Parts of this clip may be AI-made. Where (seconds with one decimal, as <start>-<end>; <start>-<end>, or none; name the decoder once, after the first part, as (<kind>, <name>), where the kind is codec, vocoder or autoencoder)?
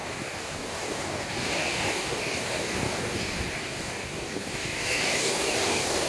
0.0-6.1 (codec, DAC)